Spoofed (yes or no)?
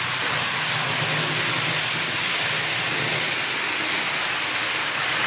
no